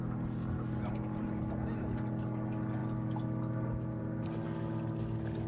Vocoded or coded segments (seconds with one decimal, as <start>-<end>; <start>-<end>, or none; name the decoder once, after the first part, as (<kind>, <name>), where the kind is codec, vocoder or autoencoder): none